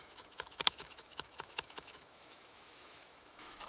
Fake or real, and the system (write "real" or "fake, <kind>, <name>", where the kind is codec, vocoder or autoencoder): fake, autoencoder, DAC-VAE